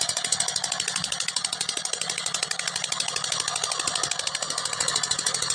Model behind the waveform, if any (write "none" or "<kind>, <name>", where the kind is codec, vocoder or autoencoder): none